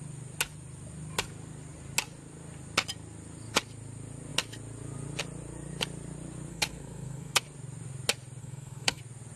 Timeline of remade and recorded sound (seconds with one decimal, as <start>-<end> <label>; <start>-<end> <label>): 0.0-6.5 recorded; 6.5-7.4 remade; 7.4-8.4 recorded; 8.4-9.0 remade; 9.0-9.4 recorded